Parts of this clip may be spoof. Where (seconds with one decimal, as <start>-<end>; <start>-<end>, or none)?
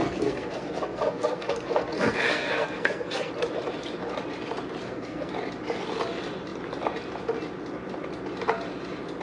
0.0-3.3; 4.8-5.3